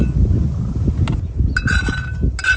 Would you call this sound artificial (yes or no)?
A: no